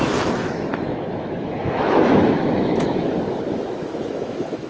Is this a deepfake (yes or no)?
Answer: yes